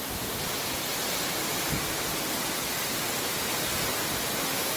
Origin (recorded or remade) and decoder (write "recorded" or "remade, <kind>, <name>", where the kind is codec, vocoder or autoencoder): recorded